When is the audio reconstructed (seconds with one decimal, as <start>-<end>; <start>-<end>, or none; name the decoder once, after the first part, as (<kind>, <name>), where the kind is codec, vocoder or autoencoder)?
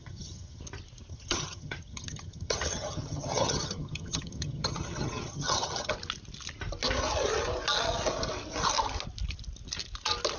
0.0-0.6 (vocoder, HiFi-GAN); 1.1-5.9